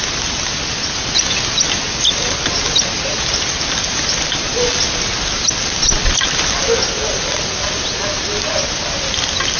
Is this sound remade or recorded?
recorded